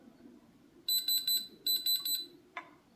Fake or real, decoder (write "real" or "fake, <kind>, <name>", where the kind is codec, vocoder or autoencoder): real